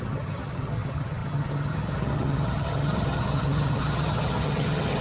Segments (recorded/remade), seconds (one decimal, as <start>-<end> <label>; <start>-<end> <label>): 0.0-5.0 remade